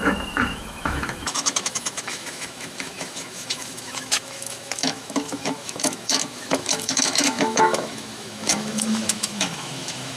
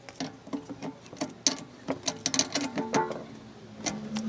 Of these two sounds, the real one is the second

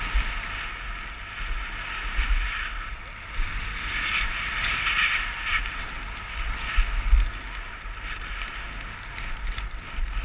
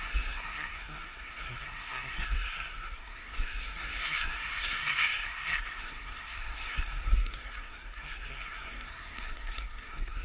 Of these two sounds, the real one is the first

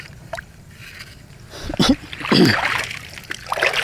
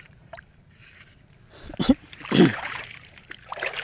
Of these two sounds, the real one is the first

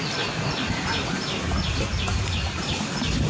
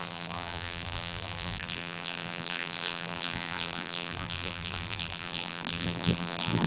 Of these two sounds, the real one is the first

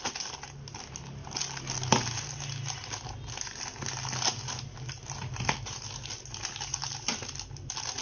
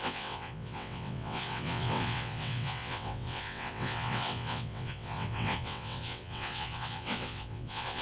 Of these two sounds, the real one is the first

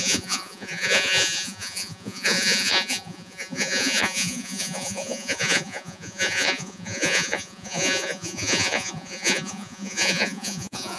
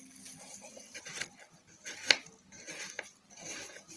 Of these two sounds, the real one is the second